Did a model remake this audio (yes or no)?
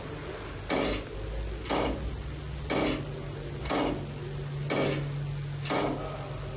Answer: no